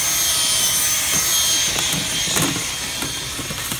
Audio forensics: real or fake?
real